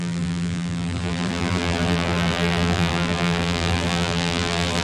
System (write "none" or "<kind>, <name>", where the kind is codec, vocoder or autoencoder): vocoder, BigVGAN v2